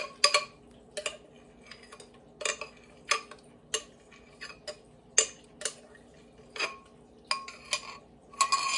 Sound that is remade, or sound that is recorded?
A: recorded